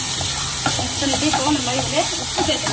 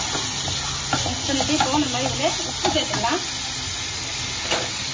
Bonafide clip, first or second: second